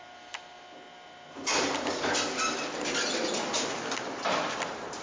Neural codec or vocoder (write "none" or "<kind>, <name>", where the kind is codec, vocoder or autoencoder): none